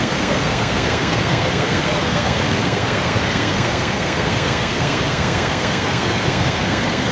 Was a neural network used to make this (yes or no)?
yes